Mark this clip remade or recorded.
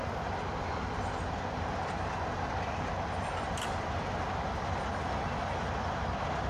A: recorded